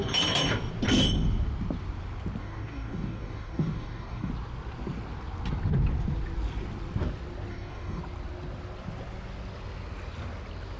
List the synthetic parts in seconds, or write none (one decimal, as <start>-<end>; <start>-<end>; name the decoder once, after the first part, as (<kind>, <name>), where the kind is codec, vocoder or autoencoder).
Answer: 2.4-4.3 (codec, DAC); 7.5-8.0